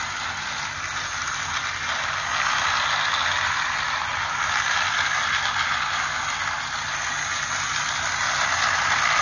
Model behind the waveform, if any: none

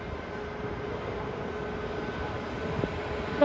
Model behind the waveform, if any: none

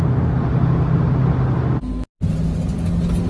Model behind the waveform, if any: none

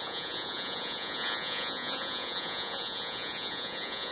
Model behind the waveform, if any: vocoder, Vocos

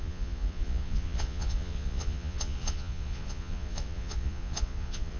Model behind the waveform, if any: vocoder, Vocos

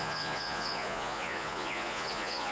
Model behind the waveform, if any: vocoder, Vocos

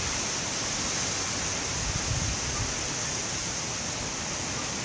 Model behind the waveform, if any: none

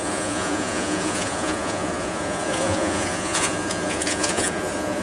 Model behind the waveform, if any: vocoder, Vocos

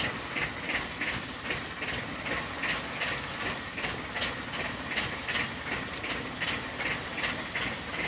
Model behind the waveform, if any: none